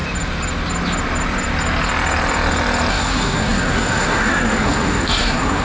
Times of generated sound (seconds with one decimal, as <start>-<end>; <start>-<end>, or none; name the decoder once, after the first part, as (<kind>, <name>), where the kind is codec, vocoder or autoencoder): 2.9-5.6 (codec, SNAC)